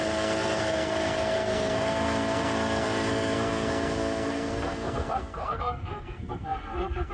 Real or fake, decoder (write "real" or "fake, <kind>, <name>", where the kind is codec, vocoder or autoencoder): fake, codec, SNAC